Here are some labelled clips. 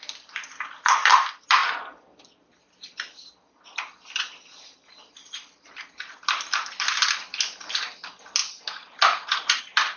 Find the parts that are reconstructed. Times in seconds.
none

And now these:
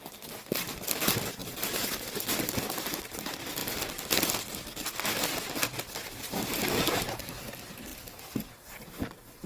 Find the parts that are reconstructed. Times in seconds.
1.4-2.2; 7.9-8.9

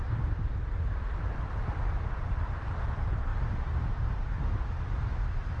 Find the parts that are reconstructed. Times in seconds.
0.0-3.3

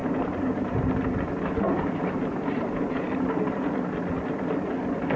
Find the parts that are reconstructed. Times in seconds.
0.0-3.1